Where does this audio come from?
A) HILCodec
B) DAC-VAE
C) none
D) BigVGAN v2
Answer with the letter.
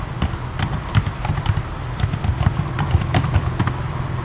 C